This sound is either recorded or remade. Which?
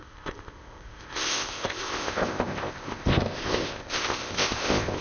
remade